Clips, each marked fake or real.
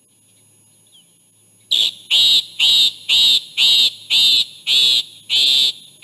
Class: real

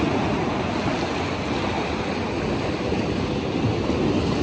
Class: real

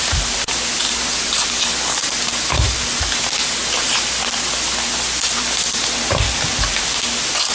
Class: real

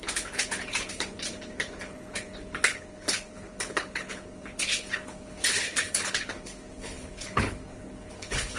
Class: fake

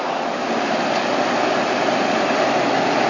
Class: real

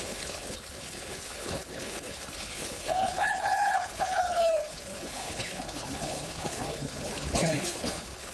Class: fake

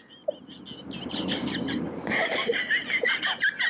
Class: real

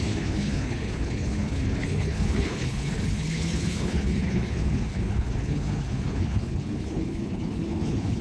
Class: fake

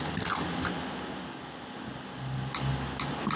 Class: real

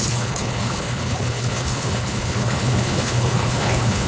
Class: fake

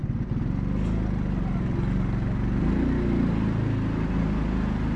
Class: real